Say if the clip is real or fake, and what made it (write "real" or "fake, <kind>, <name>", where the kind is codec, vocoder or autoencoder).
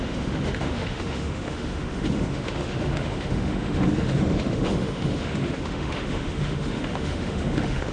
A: fake, autoencoder, DAC-VAE